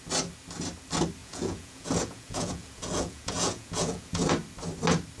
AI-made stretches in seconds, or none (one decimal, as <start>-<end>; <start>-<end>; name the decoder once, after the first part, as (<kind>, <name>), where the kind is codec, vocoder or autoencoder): 1.2-4.3 (vocoder, Vocos)